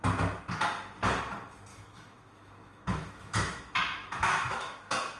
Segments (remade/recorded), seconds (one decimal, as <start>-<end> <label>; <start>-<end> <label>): 0.0-1.7 recorded; 1.7-4.8 remade; 4.8-5.2 recorded